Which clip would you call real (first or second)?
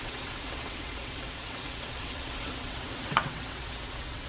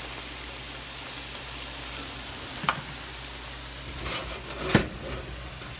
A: second